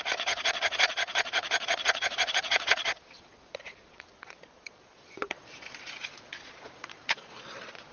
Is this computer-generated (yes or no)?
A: yes